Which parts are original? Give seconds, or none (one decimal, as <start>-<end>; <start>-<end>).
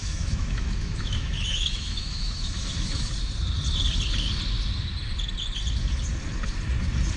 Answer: 3.1-7.2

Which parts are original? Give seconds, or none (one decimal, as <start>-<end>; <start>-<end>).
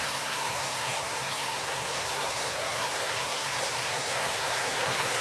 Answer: none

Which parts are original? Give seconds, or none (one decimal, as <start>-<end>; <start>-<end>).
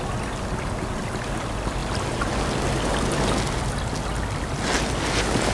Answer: 0.0-5.5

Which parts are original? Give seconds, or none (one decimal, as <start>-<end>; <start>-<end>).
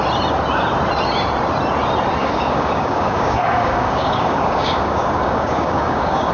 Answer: 0.0-2.2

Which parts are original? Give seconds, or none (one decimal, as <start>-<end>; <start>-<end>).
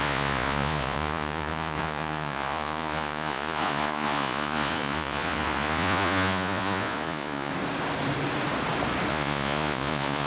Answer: 7.5-9.1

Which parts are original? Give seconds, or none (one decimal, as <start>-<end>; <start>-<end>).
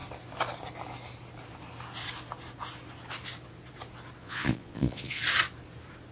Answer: 0.0-4.2; 5.2-6.1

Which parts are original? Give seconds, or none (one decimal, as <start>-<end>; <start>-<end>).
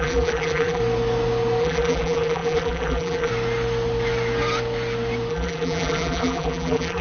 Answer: 0.8-1.6; 3.3-5.3